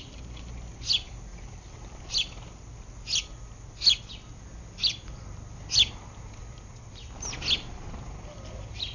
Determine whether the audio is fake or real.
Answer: real